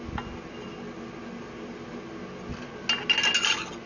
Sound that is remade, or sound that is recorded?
recorded